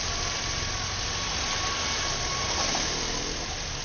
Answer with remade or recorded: recorded